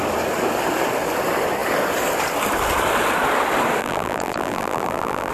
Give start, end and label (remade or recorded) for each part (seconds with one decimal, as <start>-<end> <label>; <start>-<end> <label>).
0.0-3.8 recorded; 3.8-5.3 remade